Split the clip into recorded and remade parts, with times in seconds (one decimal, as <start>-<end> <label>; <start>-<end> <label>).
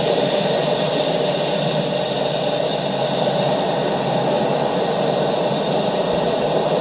0.0-6.8 recorded